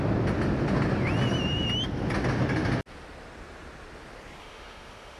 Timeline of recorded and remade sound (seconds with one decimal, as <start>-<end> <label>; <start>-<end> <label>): 0.0-4.4 recorded; 4.4-5.2 remade

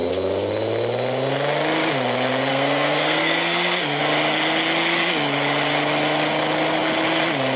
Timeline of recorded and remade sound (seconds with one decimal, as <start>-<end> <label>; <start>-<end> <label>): 0.0-2.5 recorded; 2.5-4.0 remade; 4.0-7.6 recorded